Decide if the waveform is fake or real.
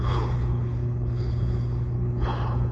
fake